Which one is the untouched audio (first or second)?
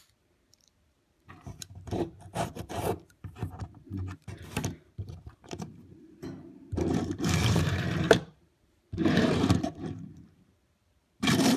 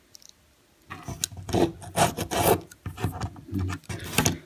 second